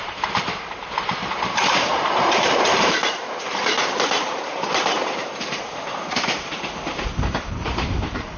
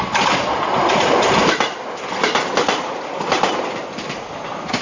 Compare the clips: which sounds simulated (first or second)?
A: first